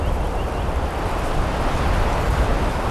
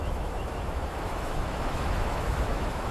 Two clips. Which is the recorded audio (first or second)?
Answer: first